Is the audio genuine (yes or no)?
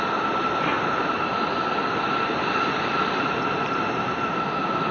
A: yes